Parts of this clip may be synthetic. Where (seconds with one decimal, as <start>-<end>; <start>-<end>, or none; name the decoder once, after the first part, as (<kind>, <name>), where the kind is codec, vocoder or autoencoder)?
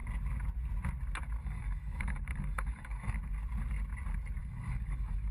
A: 1.4-3.2 (codec, DAC); 4.4-5.3